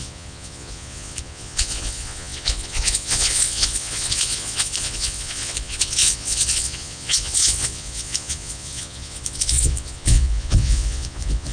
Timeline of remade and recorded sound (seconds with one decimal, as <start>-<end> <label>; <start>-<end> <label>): 0.0-11.5 remade